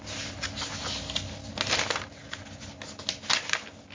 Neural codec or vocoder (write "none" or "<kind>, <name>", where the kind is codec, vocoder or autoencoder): none